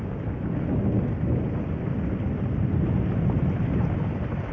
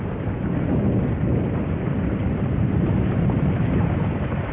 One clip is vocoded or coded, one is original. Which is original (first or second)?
first